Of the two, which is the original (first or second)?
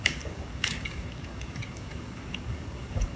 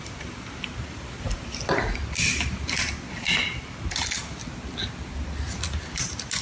second